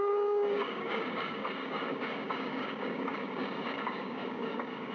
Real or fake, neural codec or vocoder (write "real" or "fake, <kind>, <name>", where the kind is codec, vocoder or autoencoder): fake, codec, DAC